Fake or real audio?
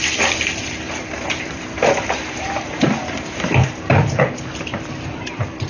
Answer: fake